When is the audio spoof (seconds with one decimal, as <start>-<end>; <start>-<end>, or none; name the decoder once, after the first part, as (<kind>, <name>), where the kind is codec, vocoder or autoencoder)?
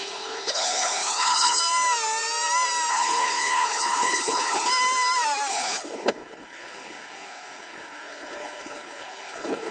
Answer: 0.0-1.6 (codec, HILCodec); 2.9-4.7; 5.5-9.7